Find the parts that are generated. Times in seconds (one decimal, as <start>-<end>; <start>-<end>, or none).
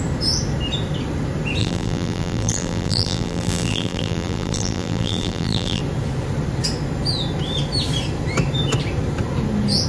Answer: 1.6-5.8